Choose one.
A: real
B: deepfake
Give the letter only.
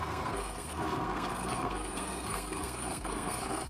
B